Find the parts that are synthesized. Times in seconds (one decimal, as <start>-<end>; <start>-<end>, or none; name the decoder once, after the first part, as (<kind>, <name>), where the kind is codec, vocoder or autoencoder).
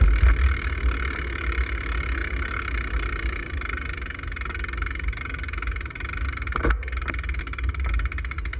none